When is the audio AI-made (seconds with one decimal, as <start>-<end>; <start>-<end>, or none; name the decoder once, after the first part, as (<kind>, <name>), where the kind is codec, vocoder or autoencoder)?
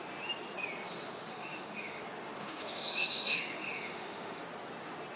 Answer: 1.3-2.0 (autoencoder, DAC-VAE); 2.4-4.4